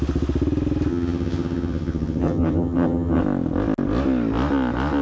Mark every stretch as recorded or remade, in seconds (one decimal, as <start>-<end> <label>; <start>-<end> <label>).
0.0-0.9 recorded; 0.9-3.2 remade; 3.2-5.0 recorded